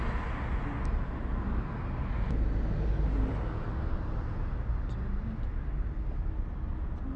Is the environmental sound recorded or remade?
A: recorded